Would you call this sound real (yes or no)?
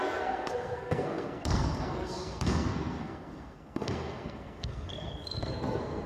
no